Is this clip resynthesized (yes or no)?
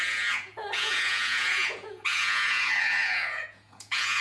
yes